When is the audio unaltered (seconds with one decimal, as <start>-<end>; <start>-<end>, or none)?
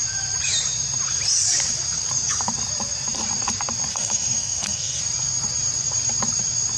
0.0-3.9; 5.0-6.8